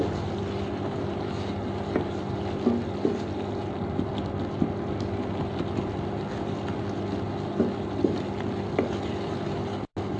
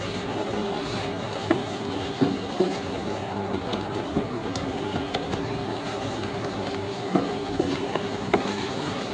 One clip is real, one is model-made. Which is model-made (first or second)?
second